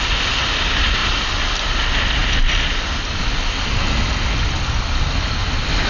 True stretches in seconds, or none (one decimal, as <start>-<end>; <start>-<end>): 0.0-5.9